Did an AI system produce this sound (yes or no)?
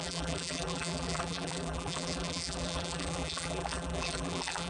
yes